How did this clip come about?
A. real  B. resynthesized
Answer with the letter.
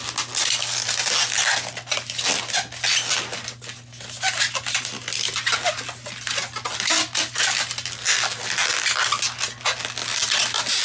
A